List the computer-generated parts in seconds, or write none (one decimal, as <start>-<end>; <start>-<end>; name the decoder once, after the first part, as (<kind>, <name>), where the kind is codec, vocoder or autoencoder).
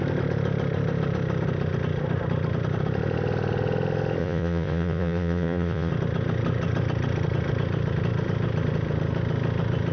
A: 4.2-5.9 (vocoder, Vocos)